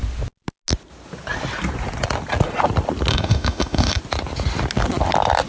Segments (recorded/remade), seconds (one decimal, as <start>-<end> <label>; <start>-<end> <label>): 0.0-3.1 recorded; 3.1-4.0 remade; 4.0-5.5 recorded